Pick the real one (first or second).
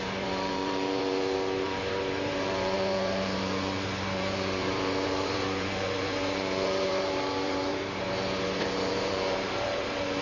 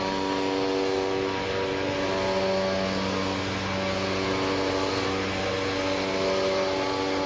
second